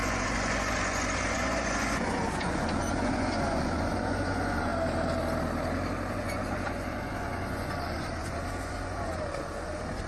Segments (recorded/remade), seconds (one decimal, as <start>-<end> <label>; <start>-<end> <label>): 0.0-4.7 remade; 4.7-6.1 recorded; 6.1-10.1 remade